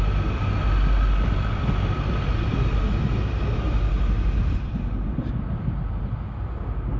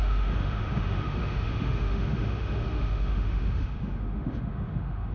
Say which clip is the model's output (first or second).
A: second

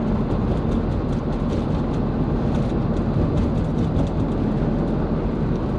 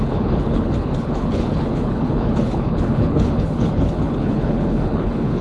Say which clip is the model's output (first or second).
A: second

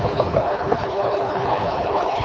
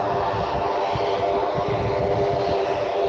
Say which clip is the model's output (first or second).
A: first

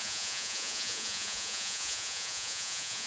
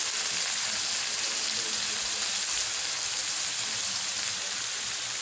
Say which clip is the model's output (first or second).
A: first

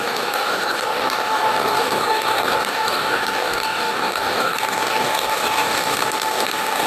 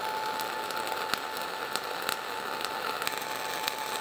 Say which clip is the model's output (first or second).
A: first